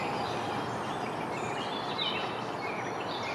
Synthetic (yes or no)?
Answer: no